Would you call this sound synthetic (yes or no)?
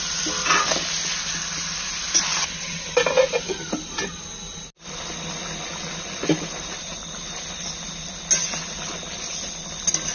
no